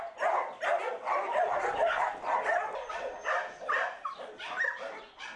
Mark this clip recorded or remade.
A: recorded